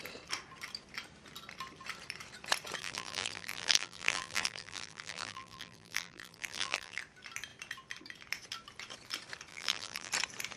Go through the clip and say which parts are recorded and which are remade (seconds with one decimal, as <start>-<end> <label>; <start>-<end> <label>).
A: 0.0-2.8 recorded; 2.8-7.0 remade; 7.0-9.5 recorded; 9.5-10.1 remade; 10.1-10.6 recorded